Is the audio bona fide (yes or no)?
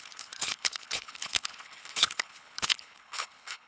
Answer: no